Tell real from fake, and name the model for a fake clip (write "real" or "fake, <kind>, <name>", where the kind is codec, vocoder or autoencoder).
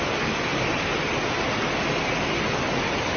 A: real